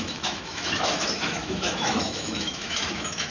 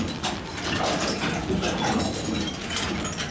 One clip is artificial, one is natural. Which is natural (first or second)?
second